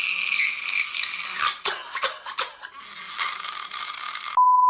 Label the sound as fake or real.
real